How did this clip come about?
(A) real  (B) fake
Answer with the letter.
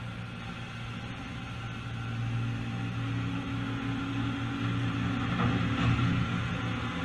A